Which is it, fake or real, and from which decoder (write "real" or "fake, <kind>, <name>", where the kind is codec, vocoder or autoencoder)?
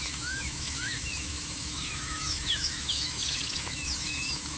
fake, autoencoder, DAC-VAE